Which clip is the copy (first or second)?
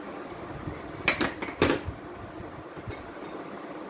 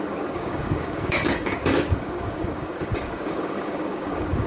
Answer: second